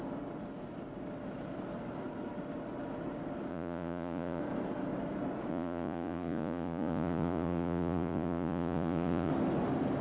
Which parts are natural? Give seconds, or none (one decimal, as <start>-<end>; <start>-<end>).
0.0-3.5; 4.4-5.5; 9.3-10.0